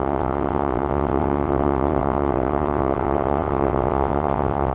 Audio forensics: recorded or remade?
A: remade